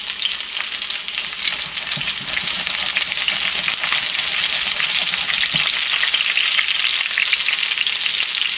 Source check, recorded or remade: recorded